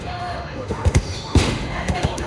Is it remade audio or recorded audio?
remade